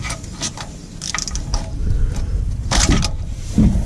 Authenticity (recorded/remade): remade